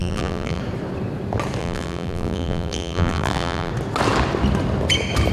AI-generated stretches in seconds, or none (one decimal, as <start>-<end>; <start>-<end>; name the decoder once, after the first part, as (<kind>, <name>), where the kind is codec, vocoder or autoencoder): 0.0-0.6 (vocoder, BigVGAN v2); 1.6-3.7